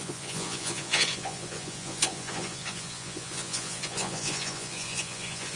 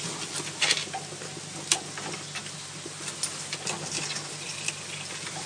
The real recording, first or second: second